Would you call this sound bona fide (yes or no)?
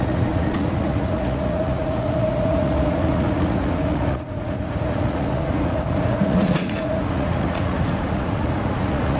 no